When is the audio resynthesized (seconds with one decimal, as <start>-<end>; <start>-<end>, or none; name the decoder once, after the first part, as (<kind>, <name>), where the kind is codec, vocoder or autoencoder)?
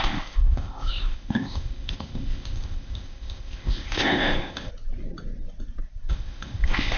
0.0-4.7 (codec, ZipCodec); 6.1-7.0